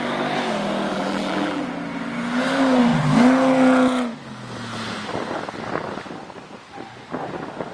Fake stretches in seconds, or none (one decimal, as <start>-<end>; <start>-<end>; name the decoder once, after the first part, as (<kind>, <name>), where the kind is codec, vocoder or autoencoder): 0.9-1.6 (vocoder, BigVGAN v2)